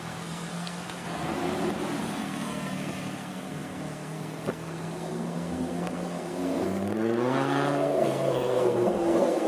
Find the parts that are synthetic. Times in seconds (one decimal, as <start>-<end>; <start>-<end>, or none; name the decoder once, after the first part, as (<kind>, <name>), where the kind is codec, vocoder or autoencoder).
0.0-1.4 (codec, SNAC); 2.0-9.5